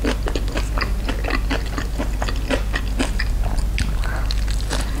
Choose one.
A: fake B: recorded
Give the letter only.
B